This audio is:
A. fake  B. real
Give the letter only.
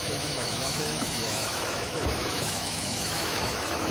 A